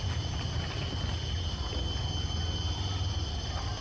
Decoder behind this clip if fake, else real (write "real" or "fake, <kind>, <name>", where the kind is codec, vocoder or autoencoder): real